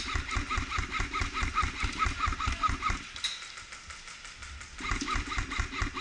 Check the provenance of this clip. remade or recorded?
recorded